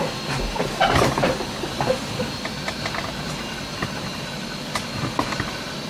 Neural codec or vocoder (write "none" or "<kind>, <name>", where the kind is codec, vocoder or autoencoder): vocoder, BigVGAN v2